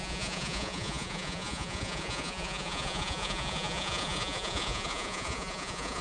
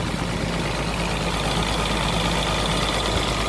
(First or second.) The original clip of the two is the second